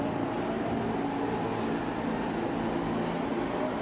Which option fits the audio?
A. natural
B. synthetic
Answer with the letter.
A